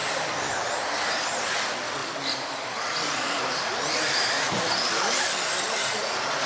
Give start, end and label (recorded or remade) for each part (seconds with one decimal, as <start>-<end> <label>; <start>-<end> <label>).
0.0-2.0 recorded; 2.0-5.9 remade; 5.9-6.5 recorded